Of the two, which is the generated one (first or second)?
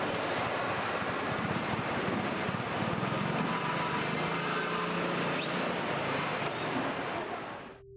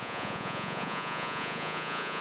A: second